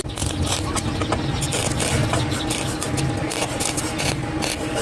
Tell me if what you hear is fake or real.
real